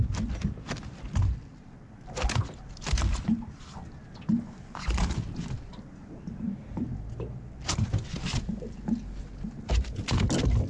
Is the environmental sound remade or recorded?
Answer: recorded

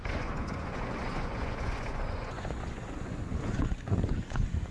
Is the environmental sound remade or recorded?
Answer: remade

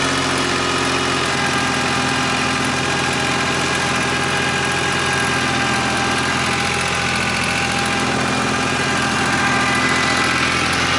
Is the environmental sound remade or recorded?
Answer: recorded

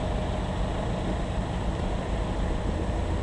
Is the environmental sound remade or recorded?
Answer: recorded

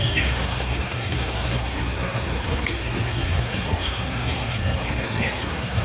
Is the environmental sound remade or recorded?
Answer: remade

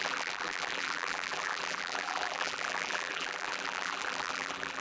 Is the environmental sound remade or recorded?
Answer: remade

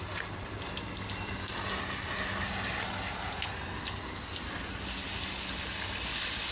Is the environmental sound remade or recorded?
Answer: recorded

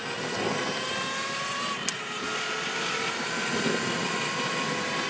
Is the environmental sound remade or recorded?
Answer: recorded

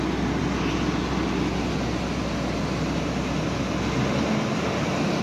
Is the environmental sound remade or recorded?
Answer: recorded